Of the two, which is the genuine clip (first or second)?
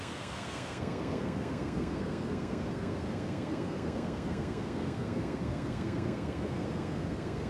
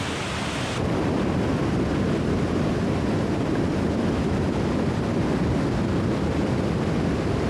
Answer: second